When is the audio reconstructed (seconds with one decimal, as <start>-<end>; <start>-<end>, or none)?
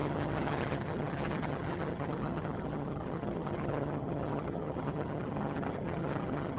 0.0-6.6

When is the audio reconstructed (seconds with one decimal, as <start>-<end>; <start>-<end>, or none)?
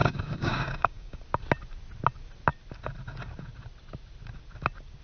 0.0-1.2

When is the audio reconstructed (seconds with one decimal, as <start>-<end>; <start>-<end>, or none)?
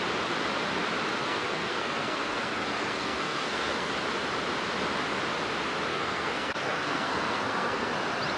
1.2-3.9; 5.9-7.9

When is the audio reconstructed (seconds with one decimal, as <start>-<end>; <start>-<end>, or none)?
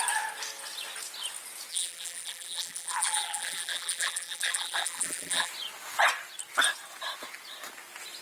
1.7-5.5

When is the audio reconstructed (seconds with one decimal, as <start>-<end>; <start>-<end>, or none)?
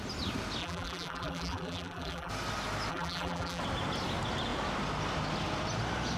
0.6-2.3; 2.9-3.6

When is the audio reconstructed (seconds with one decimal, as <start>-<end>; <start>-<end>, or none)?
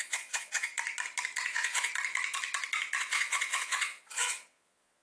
0.0-0.7; 1.5-1.9; 3.0-5.0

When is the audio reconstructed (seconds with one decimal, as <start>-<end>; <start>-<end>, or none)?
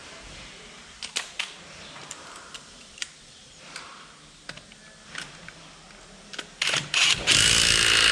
0.0-1.4; 2.0-3.9